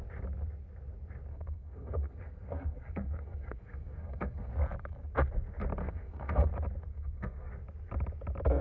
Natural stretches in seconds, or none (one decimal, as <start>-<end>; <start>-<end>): 0.0-1.3; 4.5-5.8; 6.5-6.9; 7.5-8.6